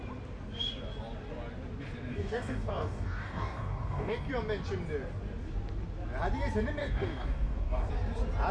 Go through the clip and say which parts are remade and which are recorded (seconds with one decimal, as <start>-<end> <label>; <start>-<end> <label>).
0.0-2.1 recorded; 2.1-4.3 remade; 4.3-6.8 recorded; 6.8-7.9 remade; 7.9-8.5 recorded